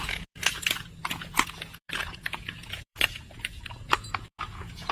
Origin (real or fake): fake